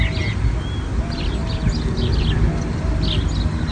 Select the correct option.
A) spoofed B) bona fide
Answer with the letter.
B